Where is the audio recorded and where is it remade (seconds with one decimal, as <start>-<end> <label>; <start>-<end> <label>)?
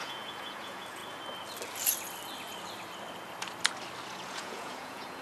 0.0-1.0 remade; 1.0-4.1 recorded; 4.1-5.2 remade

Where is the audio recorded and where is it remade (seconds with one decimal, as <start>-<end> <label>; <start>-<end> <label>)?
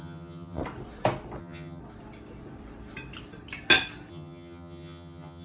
0.0-0.6 remade; 0.6-1.4 recorded; 1.4-1.8 remade; 1.8-4.1 recorded; 4.1-5.4 remade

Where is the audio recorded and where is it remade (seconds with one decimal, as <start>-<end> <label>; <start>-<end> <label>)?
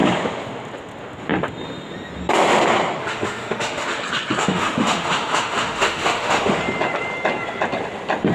0.0-3.0 recorded; 3.0-4.0 remade; 4.0-4.4 recorded; 4.4-6.6 remade; 6.6-8.3 recorded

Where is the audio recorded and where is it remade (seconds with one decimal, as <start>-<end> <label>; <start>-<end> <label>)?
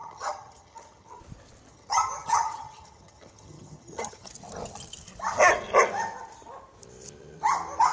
0.0-1.2 remade; 1.2-1.7 recorded; 1.7-4.3 remade; 4.3-7.9 recorded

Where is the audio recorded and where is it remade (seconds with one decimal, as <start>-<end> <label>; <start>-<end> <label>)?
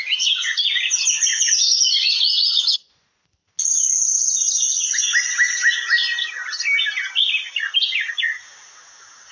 0.0-1.3 recorded; 1.3-3.1 remade; 3.1-9.3 recorded